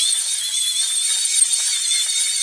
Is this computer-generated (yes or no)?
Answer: no